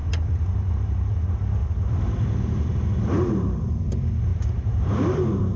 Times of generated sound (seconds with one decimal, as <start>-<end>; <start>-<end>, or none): 1.6-2.9; 4.3-5.6